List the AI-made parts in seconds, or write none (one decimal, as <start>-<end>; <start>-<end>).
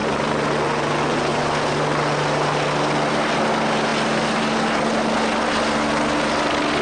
none